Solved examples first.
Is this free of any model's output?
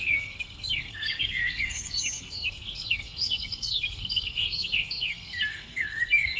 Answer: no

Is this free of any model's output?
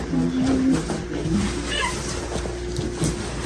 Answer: yes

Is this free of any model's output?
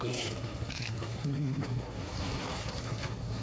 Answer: no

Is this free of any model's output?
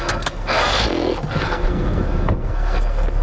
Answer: no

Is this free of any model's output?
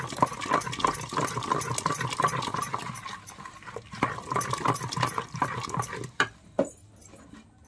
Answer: yes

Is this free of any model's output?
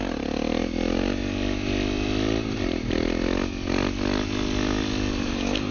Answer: yes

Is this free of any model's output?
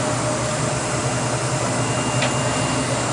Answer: yes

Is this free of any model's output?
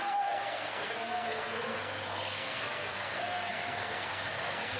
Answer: no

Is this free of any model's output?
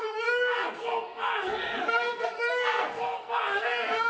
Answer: no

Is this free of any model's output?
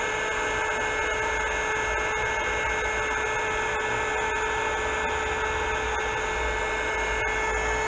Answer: yes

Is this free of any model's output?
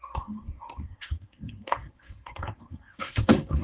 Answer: no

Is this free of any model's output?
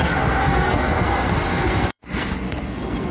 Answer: no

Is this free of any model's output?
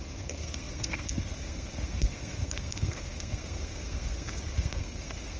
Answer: no